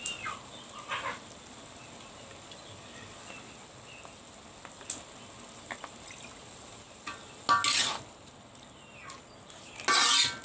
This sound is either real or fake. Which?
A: real